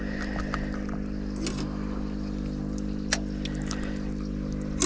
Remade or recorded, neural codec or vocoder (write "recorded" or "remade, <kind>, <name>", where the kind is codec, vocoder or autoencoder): recorded